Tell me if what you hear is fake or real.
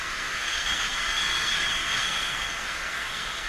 fake